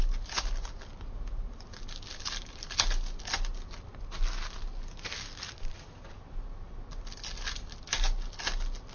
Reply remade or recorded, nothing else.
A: recorded